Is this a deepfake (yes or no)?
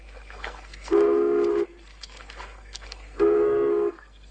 yes